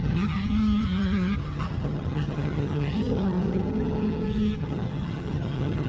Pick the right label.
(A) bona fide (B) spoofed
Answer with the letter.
B